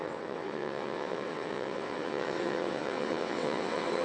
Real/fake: fake